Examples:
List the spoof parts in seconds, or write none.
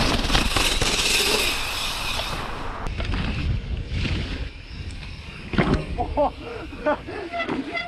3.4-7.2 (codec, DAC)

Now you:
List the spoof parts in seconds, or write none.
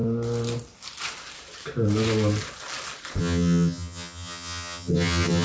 3.2-5.4 (vocoder, HiFi-GAN)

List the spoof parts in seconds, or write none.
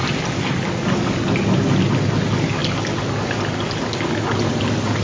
none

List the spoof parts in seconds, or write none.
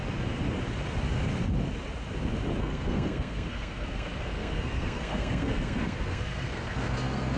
2.6-7.4 (codec, SNAC)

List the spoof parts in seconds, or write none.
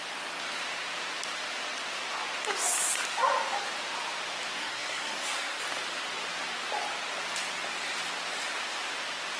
4.6-5.6 (codec, SNAC)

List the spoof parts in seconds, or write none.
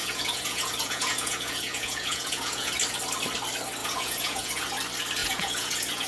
0.0-2.7 (vocoder, Vocos); 3.8-4.7; 5.2-6.1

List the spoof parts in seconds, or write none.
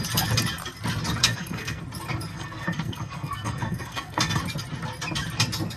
1.2-1.8 (codec, SNAC); 2.3-4.4